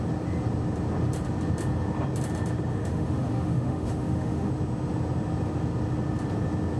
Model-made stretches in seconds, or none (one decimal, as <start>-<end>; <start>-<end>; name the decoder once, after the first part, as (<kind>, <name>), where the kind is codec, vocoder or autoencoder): 2.7-4.5 (autoencoder, DAC-VAE)